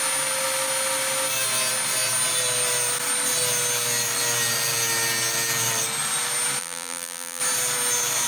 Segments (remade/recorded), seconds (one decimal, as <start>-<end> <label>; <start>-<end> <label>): 0.0-6.6 recorded; 6.6-7.4 remade; 7.4-8.3 recorded